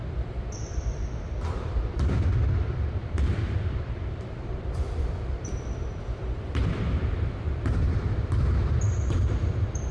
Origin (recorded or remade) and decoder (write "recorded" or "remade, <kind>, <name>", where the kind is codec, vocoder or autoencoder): remade, vocoder, BigVGAN v2